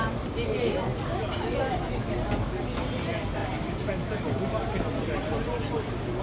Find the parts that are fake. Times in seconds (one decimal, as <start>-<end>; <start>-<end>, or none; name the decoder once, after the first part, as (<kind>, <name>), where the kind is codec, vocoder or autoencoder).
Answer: none